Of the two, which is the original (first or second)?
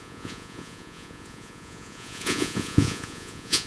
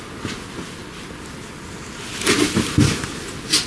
second